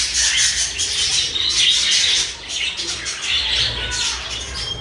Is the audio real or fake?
real